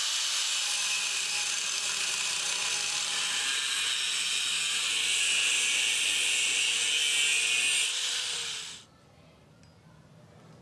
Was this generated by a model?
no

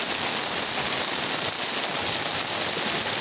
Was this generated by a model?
no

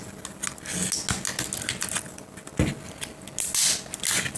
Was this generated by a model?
no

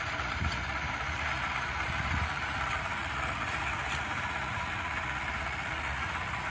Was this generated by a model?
yes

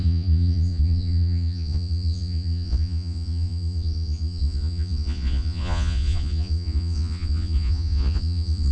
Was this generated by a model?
yes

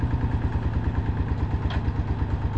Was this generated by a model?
no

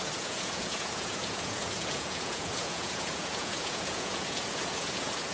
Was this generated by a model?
yes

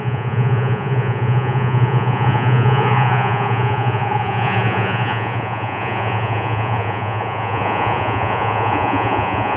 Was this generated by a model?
yes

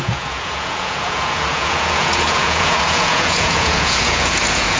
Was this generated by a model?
yes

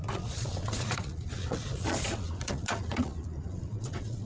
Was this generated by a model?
yes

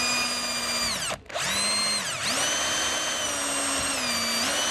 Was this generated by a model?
no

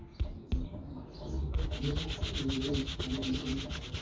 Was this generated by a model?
no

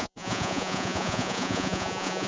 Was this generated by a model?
yes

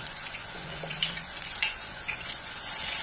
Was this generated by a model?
yes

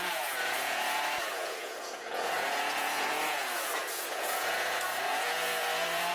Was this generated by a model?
yes